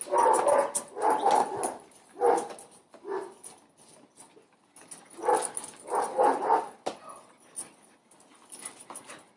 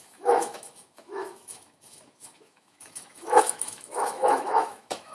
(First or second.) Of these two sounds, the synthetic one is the second